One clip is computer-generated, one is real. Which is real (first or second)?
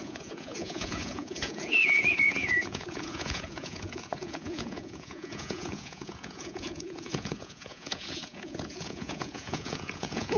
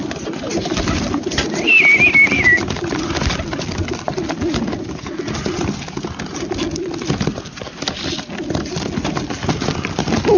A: second